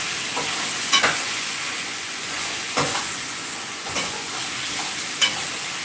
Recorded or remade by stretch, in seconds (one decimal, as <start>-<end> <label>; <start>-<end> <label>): 0.0-0.8 recorded; 0.8-4.3 remade; 4.3-5.8 recorded